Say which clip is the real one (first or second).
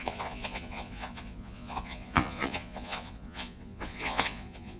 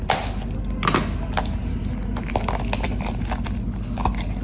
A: second